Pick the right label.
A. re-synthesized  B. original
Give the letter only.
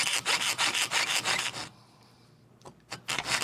B